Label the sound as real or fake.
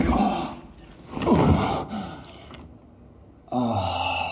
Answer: real